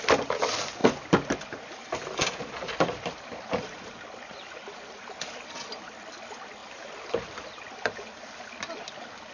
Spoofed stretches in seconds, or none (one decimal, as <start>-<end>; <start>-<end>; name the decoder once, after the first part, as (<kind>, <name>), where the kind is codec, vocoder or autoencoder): 0.0-6.6 (vocoder, BigVGAN v2)